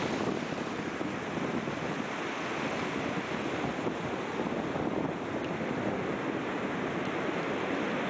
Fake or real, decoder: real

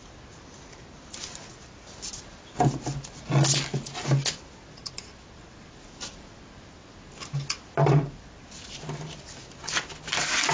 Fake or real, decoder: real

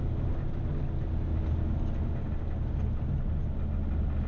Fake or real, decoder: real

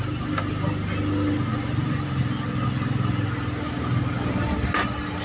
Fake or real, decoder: real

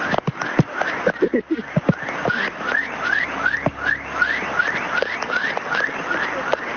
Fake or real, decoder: real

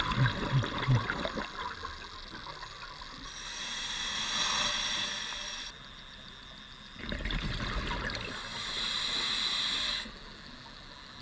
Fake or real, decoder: real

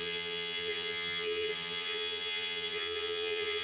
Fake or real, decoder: fake, vocoder, HiFi-GAN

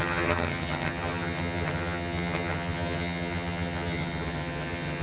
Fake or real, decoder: fake, vocoder, HiFi-GAN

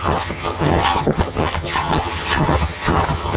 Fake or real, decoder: fake, vocoder, HiFi-GAN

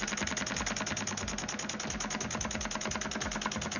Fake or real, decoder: real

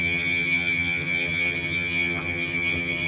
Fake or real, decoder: fake, vocoder, HiFi-GAN